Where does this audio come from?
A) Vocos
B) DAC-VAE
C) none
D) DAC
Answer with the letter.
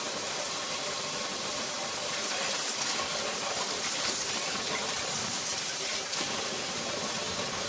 C